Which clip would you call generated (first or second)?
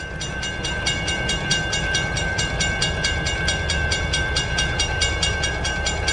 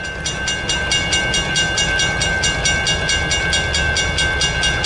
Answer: first